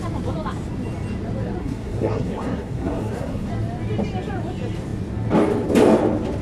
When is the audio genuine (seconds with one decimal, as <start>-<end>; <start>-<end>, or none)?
0.0-1.6; 3.5-6.4